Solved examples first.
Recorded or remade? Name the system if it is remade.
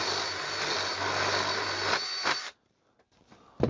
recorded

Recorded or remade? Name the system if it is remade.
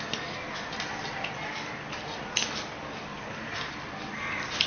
recorded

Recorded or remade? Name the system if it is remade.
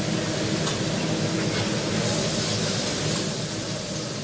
recorded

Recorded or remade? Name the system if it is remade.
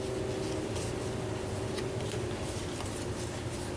recorded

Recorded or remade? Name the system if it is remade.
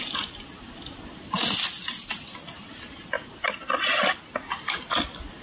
recorded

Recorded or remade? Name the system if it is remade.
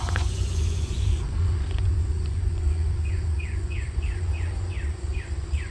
remade, vocoder, Vocos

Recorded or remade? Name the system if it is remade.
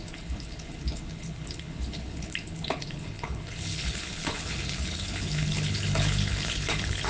remade, codec, HILCodec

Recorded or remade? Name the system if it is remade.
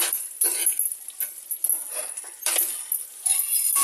recorded